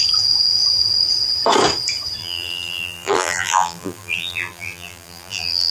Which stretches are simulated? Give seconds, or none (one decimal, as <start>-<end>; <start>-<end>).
2.2-5.7